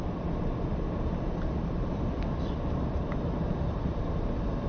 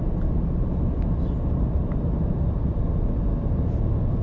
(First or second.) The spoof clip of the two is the first